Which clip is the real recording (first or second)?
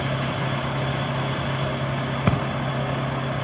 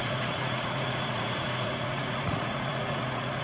first